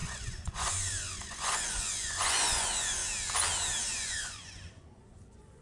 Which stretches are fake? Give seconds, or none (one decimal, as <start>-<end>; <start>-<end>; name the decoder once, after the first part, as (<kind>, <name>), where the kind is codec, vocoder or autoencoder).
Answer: 0.0-3.0 (vocoder, Vocos); 3.8-5.6